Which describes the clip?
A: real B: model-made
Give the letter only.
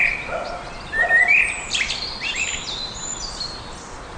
B